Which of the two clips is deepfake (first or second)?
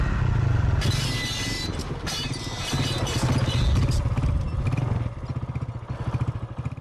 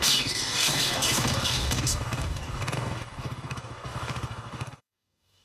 second